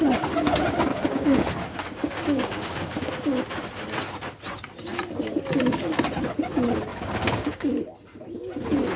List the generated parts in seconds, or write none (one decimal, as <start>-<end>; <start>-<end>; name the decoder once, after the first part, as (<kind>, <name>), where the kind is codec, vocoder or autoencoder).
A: 0.9-3.1 (codec, DAC); 6.9-7.7